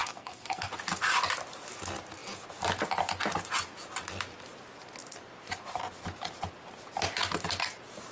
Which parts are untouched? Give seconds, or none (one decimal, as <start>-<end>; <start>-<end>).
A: 0.7-8.1